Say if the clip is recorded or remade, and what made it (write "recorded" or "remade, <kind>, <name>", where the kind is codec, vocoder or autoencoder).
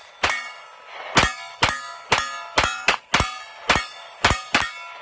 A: recorded